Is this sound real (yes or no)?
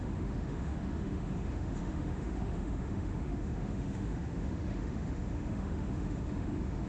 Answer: no